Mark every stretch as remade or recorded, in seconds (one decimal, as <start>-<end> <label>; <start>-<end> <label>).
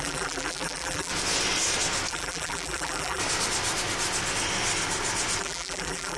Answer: 0.0-1.1 remade; 1.1-2.1 recorded; 2.1-3.2 remade; 3.2-5.4 recorded; 5.4-6.2 remade